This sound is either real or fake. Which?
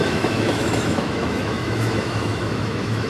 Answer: fake